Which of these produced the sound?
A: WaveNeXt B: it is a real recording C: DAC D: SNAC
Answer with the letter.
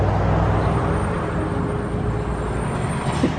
B